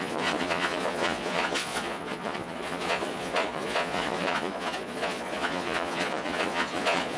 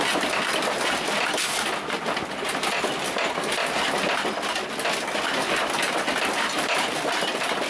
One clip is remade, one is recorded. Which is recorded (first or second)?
second